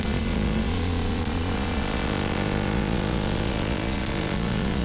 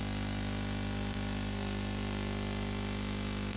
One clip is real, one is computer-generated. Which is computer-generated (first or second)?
first